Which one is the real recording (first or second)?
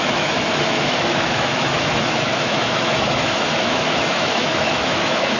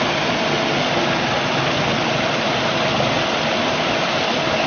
second